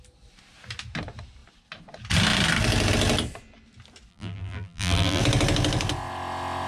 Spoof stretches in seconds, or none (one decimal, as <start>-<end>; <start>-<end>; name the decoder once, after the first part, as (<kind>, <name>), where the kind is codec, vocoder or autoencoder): 4.1-5.2 (vocoder, BigVGAN v2)